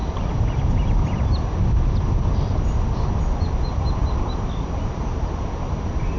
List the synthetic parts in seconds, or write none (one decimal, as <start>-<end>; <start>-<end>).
none